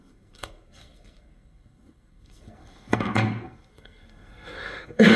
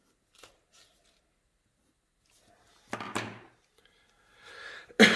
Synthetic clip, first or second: first